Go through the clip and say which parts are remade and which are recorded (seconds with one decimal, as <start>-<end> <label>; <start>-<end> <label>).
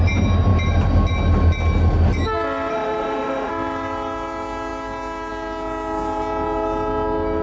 0.0-2.7 recorded; 2.7-3.5 remade; 3.5-7.4 recorded